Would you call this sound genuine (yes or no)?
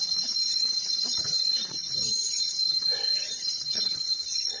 no